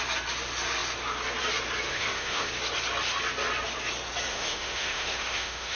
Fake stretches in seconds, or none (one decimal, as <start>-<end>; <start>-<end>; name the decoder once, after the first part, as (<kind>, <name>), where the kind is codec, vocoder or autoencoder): 1.9-2.5 (autoencoder, DAC-VAE); 4.3-5.8